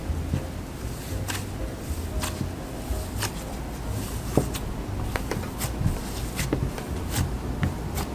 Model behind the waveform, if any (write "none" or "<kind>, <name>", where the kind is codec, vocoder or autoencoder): none